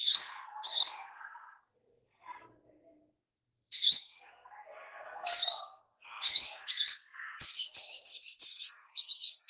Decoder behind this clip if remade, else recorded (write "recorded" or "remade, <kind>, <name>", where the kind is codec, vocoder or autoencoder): remade, codec, SNAC